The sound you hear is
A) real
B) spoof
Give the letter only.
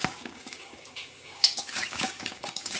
B